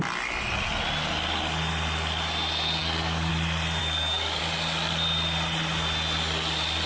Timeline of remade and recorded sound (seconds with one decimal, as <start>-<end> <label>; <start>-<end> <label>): 0.0-2.8 recorded; 2.8-3.3 remade; 3.3-3.8 recorded; 3.8-4.4 remade; 4.4-6.9 recorded